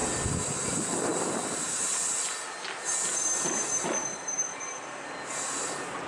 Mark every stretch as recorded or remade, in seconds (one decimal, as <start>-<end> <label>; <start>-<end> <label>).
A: 0.0-1.1 recorded; 1.1-2.1 remade; 2.1-4.1 recorded; 4.1-5.1 remade; 5.1-6.1 recorded

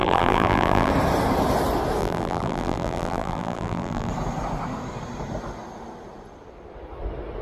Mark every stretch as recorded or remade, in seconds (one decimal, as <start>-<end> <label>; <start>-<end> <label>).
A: 0.0-0.9 remade; 0.9-2.0 recorded; 2.0-4.1 remade; 4.1-7.4 recorded

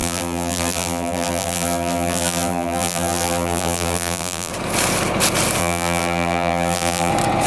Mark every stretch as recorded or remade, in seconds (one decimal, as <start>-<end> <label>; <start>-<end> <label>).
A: 0.0-4.5 remade; 4.5-5.6 recorded; 5.6-7.1 remade; 7.1-7.5 recorded

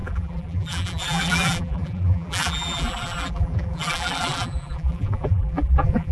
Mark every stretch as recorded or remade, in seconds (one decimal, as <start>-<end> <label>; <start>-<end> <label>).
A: 0.0-6.1 remade